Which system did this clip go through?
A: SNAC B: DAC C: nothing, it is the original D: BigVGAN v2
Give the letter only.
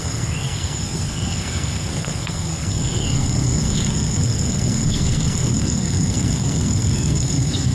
A